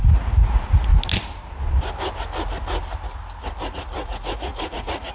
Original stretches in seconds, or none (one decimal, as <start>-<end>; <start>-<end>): 0.9-4.0

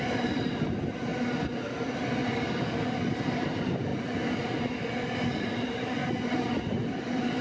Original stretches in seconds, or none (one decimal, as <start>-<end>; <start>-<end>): 1.1-3.1; 3.9-5.4; 6.0-6.7

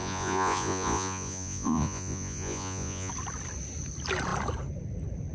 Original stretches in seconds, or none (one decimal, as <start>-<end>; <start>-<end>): 3.1-5.3

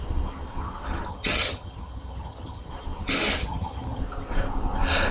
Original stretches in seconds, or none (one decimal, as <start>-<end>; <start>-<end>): 0.0-1.1; 2.7-3.4; 4.0-5.1

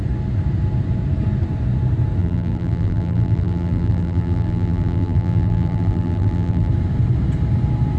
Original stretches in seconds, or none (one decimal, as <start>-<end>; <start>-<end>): 0.0-2.2; 6.7-8.0